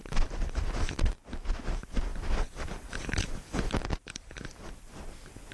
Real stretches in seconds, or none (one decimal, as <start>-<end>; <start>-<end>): 1.1-2.1; 4.7-5.5